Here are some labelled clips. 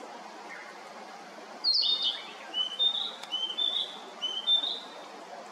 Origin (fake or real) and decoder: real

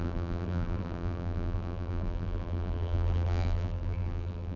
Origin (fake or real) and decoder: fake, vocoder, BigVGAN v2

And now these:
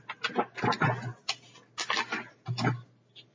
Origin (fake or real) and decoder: real